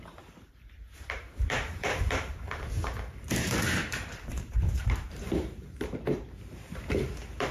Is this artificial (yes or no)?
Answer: yes